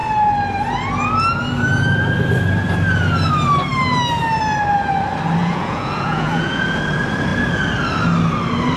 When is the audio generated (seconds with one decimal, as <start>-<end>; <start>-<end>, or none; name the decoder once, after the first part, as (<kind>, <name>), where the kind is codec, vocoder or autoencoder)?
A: 5.4-6.8 (vocoder, Vocos)